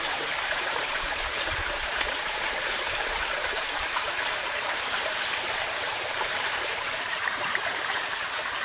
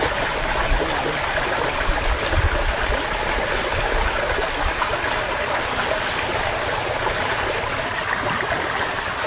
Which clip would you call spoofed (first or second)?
first